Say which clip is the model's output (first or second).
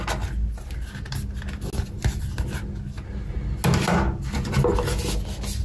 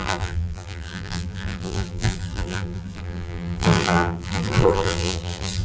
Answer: second